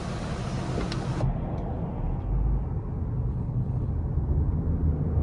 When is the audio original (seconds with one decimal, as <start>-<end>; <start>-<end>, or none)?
0.0-3.3; 3.9-5.2

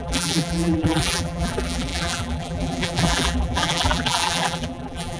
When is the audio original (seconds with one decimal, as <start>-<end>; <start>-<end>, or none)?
none

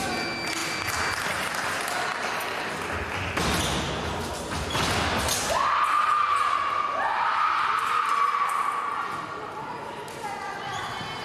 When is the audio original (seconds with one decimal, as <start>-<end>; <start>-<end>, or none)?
0.0-11.2

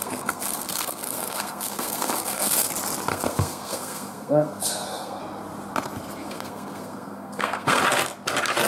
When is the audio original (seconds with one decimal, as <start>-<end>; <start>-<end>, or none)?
2.7-3.1; 5.2-6.2; 7.8-8.7

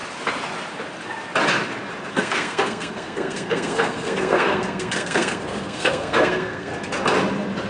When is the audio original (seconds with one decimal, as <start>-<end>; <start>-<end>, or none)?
0.0-2.1; 6.7-7.7

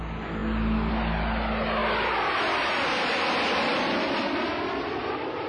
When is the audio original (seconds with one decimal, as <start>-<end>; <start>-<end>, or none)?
0.0-5.5

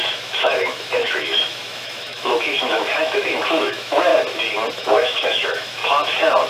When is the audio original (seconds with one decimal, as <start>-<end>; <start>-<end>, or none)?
4.1-4.7; 5.8-6.5

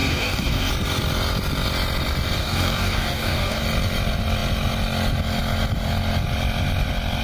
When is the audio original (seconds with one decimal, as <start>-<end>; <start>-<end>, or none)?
0.7-2.4; 3.6-7.2